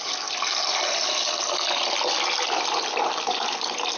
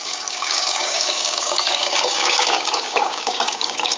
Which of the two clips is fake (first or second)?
second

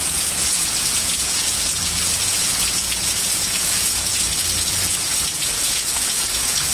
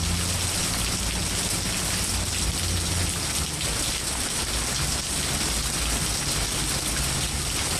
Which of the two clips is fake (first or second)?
first